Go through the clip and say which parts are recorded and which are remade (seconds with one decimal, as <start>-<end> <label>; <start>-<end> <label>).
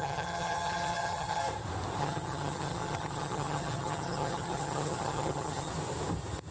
0.0-1.4 remade; 1.4-2.0 recorded; 2.0-5.7 remade; 5.7-6.5 recorded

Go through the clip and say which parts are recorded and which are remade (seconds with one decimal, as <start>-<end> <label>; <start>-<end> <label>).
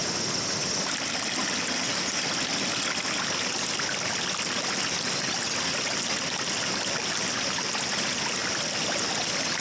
0.0-9.6 recorded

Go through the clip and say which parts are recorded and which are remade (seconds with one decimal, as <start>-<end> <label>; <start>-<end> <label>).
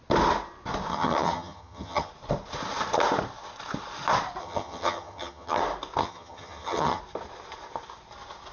0.0-0.9 recorded; 0.9-2.1 remade; 2.1-4.4 recorded; 4.4-5.6 remade; 5.6-6.0 recorded; 6.0-7.0 remade; 7.0-8.5 recorded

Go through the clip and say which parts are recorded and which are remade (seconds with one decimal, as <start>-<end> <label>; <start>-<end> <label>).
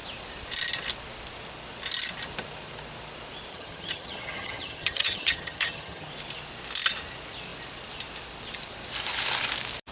0.0-3.5 recorded; 3.5-6.1 remade; 6.1-9.9 recorded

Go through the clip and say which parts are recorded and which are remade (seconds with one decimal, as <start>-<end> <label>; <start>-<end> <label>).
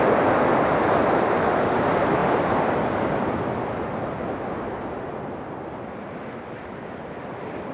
0.0-7.7 recorded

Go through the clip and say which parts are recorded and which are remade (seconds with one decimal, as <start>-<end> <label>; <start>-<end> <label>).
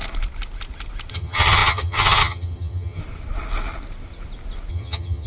0.0-1.1 recorded; 1.1-3.0 remade; 3.0-4.7 recorded; 4.7-5.3 remade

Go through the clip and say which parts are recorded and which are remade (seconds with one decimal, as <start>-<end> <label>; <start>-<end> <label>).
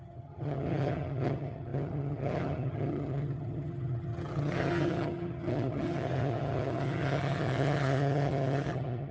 0.0-9.1 remade